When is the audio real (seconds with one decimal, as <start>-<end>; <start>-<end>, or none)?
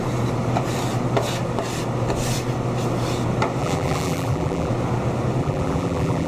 0.0-3.6; 4.7-5.4